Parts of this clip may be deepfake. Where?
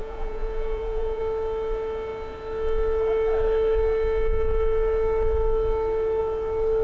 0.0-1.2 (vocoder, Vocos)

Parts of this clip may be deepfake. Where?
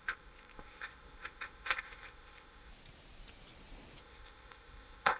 0.0-2.7 (codec, ZipCodec); 4.0-5.2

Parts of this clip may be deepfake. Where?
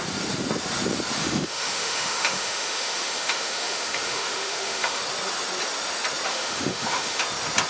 1.2-5.0 (autoencoder, DAC-VAE); 6.3-7.2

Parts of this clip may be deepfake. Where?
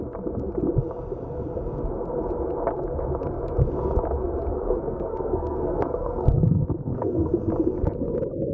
4.5-7.5 (codec, SNAC)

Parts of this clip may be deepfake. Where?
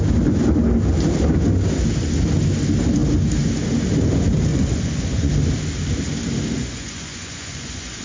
4.5-5.3 (vocoder, Vocos); 6.6-8.0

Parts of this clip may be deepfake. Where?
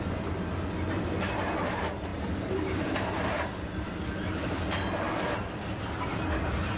none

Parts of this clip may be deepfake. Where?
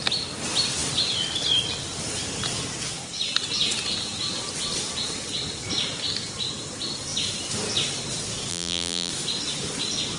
8.5-9.1 (vocoder, BigVGAN v2)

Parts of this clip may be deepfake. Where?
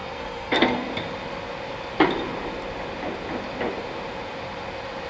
0.0-0.9 (codec, SNAC)